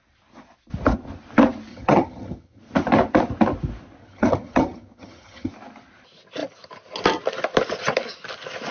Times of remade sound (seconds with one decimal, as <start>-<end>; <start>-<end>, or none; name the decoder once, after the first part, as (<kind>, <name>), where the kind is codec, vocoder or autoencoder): 1.7-2.6 (vocoder, HiFi-GAN); 4.0-5.5